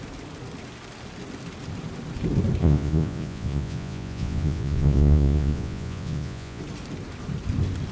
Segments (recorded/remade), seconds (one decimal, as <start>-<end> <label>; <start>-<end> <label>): 0.0-2.6 recorded; 2.6-6.6 remade; 6.6-7.9 recorded